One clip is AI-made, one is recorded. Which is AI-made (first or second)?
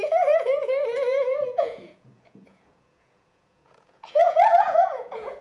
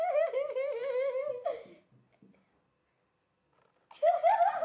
first